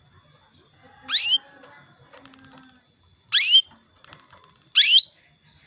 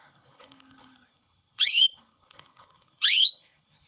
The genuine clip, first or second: first